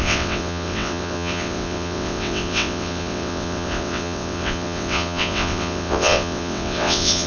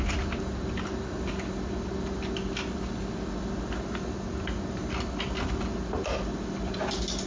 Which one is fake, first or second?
first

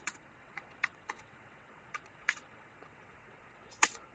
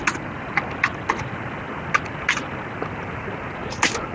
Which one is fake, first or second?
first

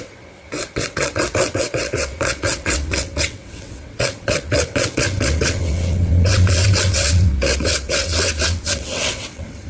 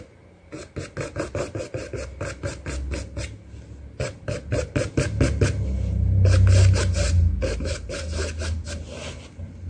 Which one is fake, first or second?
first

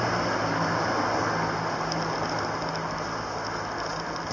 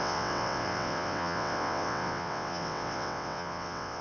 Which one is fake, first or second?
second